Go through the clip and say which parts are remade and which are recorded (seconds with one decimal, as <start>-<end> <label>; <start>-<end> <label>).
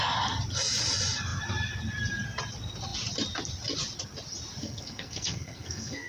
0.0-4.6 recorded; 4.6-6.1 remade